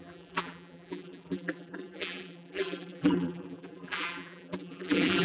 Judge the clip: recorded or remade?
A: remade